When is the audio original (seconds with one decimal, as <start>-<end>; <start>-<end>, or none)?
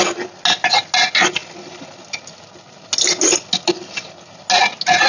0.0-5.1